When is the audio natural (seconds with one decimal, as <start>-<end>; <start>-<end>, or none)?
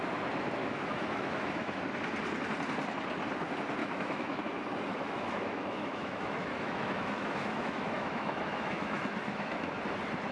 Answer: 0.0-0.6; 1.8-3.8; 4.4-4.9; 9.7-10.3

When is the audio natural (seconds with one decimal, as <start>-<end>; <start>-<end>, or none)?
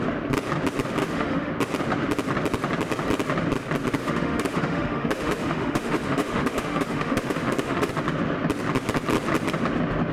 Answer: 0.0-1.0; 1.5-4.0; 7.9-10.1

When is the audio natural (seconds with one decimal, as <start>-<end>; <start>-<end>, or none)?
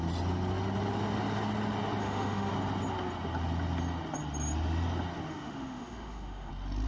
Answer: 0.0-2.0; 2.5-5.3; 6.5-6.9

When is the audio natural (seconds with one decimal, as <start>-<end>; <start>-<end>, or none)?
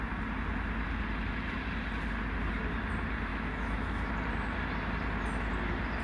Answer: 0.0-3.3; 4.1-6.0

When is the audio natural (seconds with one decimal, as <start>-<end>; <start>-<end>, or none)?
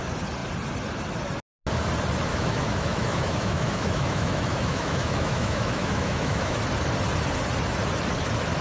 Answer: 0.0-2.3; 6.6-8.6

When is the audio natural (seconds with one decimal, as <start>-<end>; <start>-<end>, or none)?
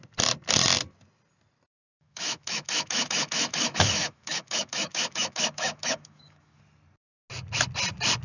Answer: 0.0-1.8; 6.6-8.2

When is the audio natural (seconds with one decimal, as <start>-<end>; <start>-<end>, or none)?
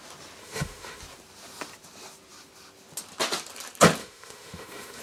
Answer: 0.0-0.4; 1.0-4.0